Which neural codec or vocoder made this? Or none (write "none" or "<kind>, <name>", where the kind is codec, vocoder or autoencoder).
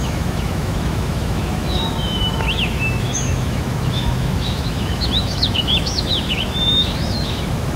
autoencoder, DAC-VAE